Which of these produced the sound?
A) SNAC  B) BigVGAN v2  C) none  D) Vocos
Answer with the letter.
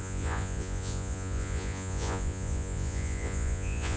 D